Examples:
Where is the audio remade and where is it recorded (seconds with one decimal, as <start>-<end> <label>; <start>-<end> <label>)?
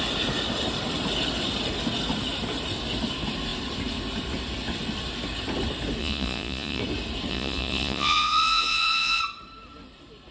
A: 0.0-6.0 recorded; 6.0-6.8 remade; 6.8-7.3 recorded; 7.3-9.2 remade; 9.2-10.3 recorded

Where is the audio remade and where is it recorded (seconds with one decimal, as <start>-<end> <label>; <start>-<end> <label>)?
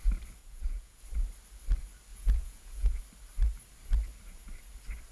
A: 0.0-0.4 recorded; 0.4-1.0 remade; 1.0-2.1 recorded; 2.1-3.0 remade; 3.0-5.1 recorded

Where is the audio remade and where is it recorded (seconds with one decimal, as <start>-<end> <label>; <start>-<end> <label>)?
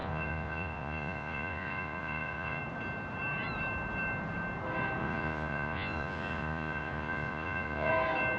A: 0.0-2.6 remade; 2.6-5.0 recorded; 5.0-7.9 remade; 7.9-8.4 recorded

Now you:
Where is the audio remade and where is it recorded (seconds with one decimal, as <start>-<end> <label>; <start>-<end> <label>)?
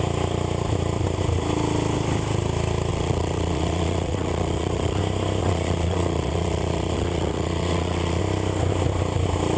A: 0.0-2.9 recorded; 2.9-5.0 remade; 5.0-5.4 recorded; 5.4-8.2 remade; 8.2-9.6 recorded